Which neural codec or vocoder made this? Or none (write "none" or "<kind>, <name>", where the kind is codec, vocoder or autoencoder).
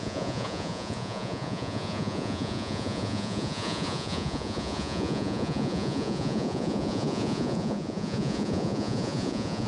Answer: vocoder, Vocos